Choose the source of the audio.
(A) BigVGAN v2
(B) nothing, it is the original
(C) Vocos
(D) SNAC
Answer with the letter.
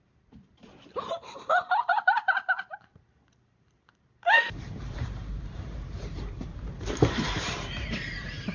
A